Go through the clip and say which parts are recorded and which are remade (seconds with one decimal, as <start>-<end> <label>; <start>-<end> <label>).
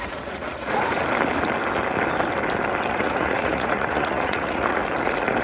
0.0-1.0 remade; 1.0-2.9 recorded; 2.9-4.8 remade; 4.8-5.4 recorded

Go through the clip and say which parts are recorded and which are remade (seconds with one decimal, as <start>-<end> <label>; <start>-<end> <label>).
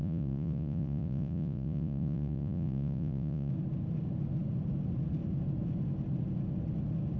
0.0-3.5 remade; 3.5-7.2 recorded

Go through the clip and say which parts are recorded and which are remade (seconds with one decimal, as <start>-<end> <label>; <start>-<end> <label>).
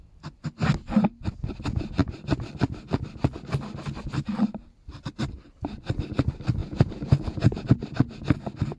0.0-6.6 recorded; 6.6-7.7 remade; 7.7-8.8 recorded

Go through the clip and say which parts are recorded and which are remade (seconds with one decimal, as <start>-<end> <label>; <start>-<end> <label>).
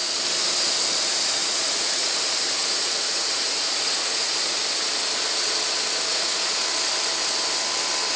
0.0-1.4 recorded; 1.4-2.1 remade; 2.1-2.6 recorded; 2.6-4.6 remade; 4.6-6.1 recorded; 6.1-6.6 remade; 6.6-8.2 recorded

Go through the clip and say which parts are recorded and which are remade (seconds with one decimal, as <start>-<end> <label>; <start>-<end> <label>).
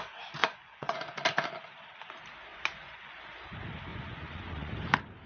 0.0-0.4 recorded; 0.4-1.2 remade; 1.2-2.5 recorded; 2.5-3.2 remade; 3.2-3.9 recorded; 3.9-4.7 remade; 4.7-5.3 recorded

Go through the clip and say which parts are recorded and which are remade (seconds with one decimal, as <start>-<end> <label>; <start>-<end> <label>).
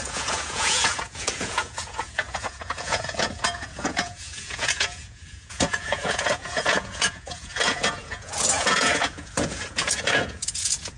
0.0-11.0 remade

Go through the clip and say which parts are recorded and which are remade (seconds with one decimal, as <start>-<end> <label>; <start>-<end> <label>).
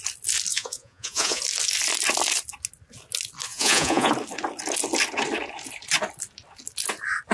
0.0-0.5 recorded; 0.5-1.4 remade; 1.4-3.5 recorded; 3.5-4.1 remade; 4.1-7.3 recorded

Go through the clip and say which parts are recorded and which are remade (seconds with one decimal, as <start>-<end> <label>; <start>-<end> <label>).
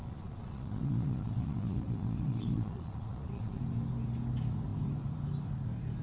0.0-3.6 remade; 3.6-6.0 recorded